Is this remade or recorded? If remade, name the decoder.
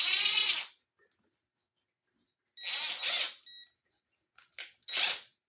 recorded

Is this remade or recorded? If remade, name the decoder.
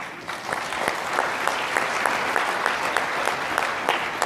recorded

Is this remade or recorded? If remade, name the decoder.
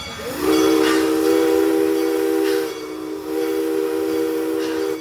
recorded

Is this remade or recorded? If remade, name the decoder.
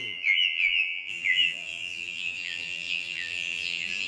remade, vocoder, BigVGAN v2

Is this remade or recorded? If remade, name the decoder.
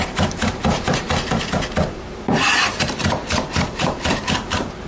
remade, vocoder, BigVGAN v2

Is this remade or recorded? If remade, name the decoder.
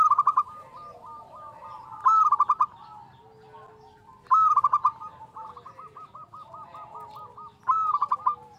recorded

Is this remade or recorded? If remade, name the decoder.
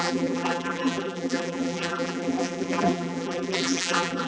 remade, vocoder, BigVGAN v2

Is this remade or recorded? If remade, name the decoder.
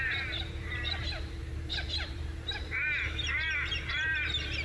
remade, vocoder, BigVGAN v2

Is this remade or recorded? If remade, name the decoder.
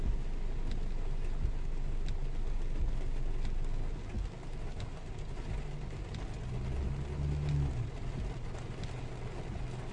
recorded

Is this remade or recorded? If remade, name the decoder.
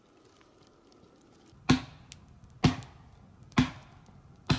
recorded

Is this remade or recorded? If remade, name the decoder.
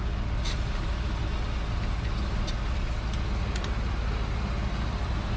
recorded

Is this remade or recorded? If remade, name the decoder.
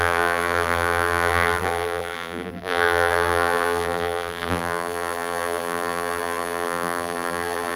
remade, vocoder, BigVGAN v2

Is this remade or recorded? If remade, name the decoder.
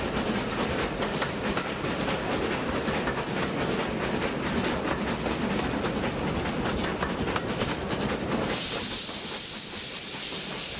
recorded